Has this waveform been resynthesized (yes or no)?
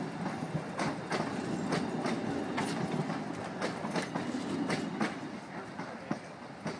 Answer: no